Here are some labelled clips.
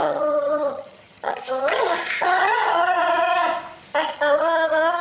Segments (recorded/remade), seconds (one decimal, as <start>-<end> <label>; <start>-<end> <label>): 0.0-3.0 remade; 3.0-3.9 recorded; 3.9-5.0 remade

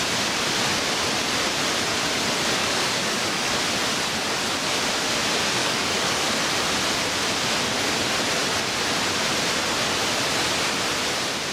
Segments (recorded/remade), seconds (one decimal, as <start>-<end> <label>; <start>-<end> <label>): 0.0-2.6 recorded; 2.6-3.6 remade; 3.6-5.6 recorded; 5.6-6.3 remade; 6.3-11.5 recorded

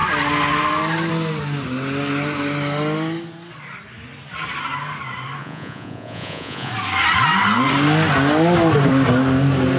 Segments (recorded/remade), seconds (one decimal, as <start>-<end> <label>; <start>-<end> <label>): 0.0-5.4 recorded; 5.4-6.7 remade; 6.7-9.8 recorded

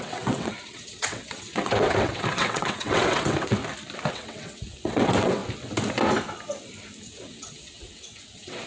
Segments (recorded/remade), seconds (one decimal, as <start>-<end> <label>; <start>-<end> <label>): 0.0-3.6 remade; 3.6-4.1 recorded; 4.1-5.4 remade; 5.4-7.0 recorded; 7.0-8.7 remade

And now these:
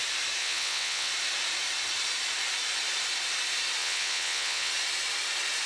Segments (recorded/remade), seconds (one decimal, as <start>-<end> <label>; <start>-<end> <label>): 0.0-0.4 recorded; 0.4-1.1 remade; 1.1-3.8 recorded; 3.8-4.7 remade; 4.7-5.7 recorded